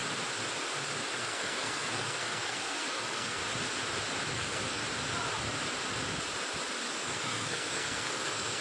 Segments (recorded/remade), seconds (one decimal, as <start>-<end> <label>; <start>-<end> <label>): 0.0-1.2 recorded; 1.2-3.4 remade; 3.4-4.3 recorded; 4.3-4.8 remade; 4.8-6.9 recorded; 6.9-8.6 remade